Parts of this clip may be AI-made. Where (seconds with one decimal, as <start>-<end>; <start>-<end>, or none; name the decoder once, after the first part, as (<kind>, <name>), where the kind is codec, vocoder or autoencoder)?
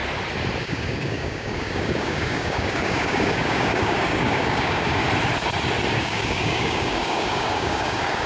0.6-5.0 (codec, DAC); 5.9-8.3